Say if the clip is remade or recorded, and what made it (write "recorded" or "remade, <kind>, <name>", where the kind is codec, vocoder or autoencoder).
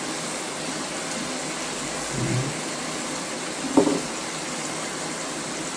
recorded